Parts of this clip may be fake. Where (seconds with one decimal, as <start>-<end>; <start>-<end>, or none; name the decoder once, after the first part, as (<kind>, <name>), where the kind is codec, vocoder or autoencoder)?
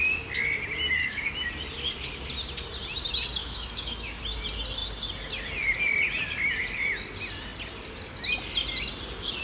1.0-1.5 (autoencoder, DAC-VAE); 3.4-4.2